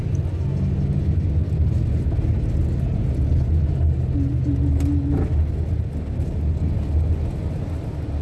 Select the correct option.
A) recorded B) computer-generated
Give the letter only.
A